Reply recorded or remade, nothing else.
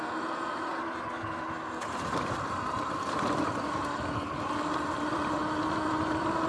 recorded